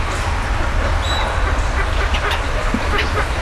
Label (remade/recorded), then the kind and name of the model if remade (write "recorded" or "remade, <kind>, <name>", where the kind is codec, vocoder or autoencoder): recorded